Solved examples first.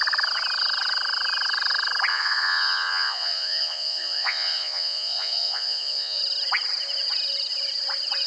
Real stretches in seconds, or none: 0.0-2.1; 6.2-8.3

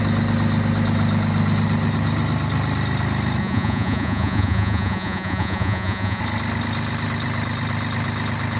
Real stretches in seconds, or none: 0.0-3.4; 6.2-8.6